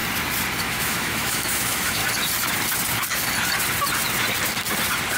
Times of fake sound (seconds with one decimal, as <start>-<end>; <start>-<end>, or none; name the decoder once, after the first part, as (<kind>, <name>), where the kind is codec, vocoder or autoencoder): 0.6-2.0 (autoencoder, DAC-VAE)